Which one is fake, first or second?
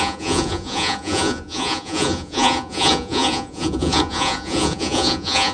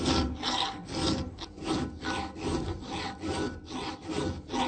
first